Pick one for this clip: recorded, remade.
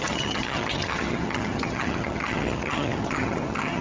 remade